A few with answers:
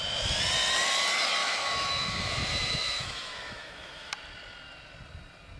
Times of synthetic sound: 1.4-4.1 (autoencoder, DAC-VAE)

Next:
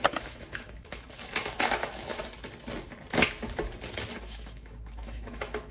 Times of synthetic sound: 0.0-2.2 (autoencoder, DAC-VAE); 4.1-5.7

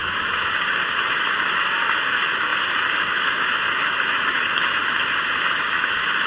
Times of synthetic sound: 0.0-6.3 (autoencoder, DAC-VAE)

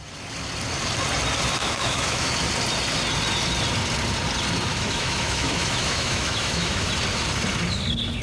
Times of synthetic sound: 1.6-2.3 (autoencoder, DAC-VAE); 4.7-6.9

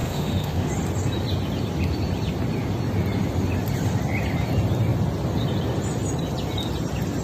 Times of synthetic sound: 0.0-0.7 (autoencoder, DAC-VAE)

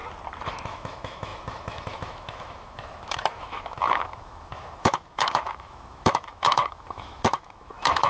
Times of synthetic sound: 0.5-8.1 (autoencoder, DAC-VAE)

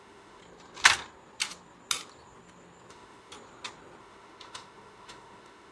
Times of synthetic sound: 0.0-0.4 (autoencoder, DAC-VAE); 2.9-3.3; 4.0-5.7

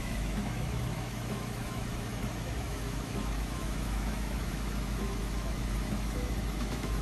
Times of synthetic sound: 0.0-7.0 (autoencoder, DAC-VAE)